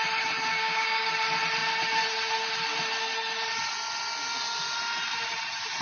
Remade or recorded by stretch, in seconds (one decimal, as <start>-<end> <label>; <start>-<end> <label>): 0.0-0.5 recorded; 0.5-1.1 remade; 1.1-5.8 recorded